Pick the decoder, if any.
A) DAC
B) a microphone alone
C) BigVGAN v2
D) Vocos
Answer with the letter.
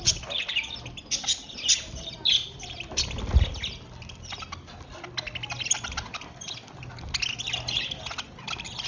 B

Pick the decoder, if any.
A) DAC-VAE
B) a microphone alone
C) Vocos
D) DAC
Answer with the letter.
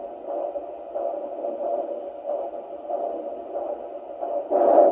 B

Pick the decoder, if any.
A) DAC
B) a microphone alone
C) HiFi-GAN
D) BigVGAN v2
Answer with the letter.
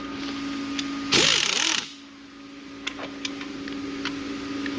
B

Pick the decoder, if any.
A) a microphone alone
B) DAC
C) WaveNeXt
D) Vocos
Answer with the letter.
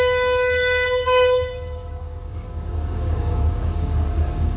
B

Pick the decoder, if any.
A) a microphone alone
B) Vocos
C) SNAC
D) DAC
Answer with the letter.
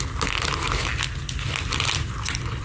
A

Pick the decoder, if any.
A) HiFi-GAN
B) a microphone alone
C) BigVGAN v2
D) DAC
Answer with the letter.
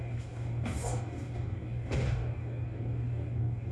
D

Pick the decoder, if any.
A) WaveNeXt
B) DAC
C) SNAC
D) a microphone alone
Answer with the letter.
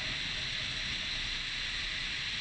D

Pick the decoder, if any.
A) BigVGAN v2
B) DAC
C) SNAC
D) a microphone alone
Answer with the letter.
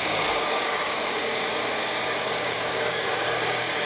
B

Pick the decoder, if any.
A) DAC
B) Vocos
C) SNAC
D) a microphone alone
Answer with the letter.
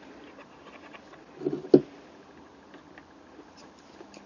D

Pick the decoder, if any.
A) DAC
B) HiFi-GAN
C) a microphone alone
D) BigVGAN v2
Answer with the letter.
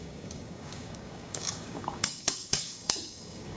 A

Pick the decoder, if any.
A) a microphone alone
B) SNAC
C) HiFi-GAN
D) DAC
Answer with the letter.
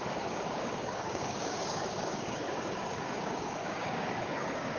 D